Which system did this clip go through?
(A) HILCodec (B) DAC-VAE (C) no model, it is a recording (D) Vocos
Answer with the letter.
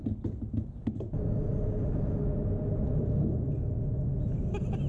C